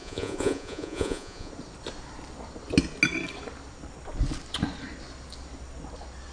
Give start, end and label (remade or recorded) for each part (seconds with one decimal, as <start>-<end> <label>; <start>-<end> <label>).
0.0-1.5 remade; 1.5-6.3 recorded

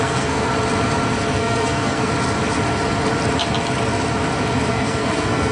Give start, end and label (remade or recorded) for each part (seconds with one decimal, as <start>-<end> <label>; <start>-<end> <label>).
0.0-0.5 remade; 0.5-1.3 recorded; 1.3-2.1 remade; 2.1-4.7 recorded; 4.7-5.5 remade

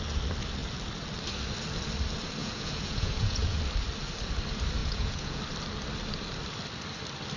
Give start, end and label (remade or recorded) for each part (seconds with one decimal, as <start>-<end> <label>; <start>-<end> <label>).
0.0-2.4 recorded; 2.4-3.6 remade; 3.6-4.8 recorded; 4.8-5.4 remade; 5.4-7.4 recorded

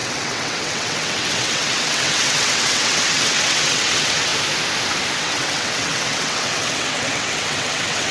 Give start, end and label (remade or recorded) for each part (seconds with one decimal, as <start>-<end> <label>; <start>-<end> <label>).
0.0-4.3 remade; 4.3-5.2 recorded; 5.2-8.1 remade